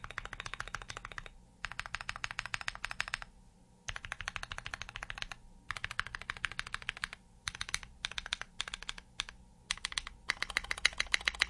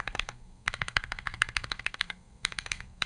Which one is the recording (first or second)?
first